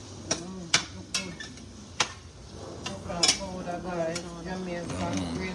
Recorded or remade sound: recorded